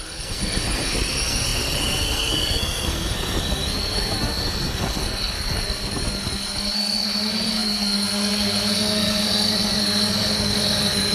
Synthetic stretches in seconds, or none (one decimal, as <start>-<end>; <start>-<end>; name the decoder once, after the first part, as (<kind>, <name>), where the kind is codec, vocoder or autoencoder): 0.0-11.1 (codec, SNAC)

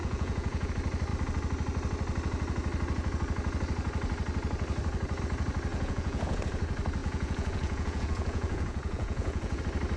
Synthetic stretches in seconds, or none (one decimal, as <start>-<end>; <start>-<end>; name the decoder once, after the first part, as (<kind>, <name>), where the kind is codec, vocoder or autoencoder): 0.0-0.7 (vocoder, Vocos); 5.7-6.4; 7.0-9.6

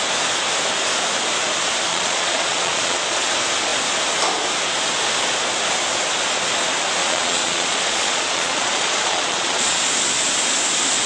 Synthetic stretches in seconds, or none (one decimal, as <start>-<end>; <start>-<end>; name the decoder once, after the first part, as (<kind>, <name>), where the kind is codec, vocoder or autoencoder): 1.9-3.3 (vocoder, Vocos); 7.0-9.9

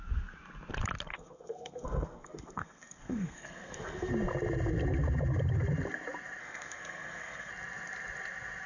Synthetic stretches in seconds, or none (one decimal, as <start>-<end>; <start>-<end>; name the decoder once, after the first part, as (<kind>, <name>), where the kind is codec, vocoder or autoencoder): 1.1-4.1 (codec, SNAC); 6.4-7.5

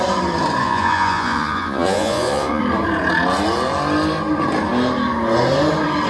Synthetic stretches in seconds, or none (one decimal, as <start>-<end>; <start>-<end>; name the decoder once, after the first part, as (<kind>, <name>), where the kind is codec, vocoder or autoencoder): 0.6-2.6 (vocoder, Vocos)